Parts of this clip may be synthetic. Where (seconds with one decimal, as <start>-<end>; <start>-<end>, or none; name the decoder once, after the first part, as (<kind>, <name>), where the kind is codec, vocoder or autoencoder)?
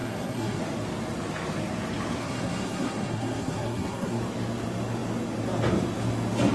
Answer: 0.0-0.6 (codec, SNAC); 2.2-4.2